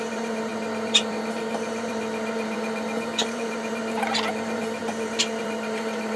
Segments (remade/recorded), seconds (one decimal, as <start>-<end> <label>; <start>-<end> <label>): 0.0-6.2 remade